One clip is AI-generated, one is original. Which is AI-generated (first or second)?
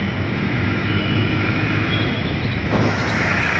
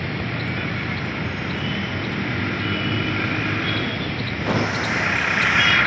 first